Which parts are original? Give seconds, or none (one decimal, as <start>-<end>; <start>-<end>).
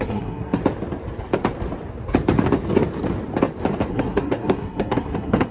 0.6-3.9